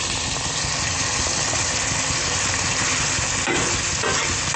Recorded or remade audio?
recorded